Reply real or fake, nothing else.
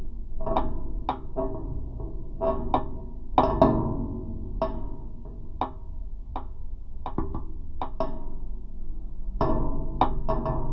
real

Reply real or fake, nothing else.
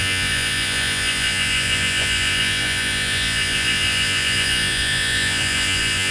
fake